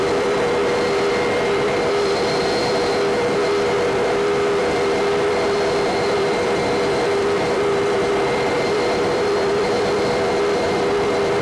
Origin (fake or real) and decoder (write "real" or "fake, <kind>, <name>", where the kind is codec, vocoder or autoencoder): fake, vocoder, BigVGAN v2